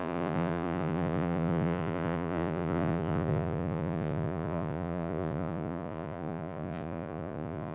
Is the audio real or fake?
fake